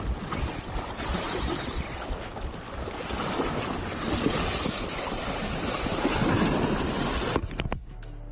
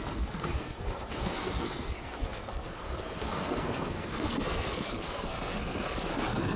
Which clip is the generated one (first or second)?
second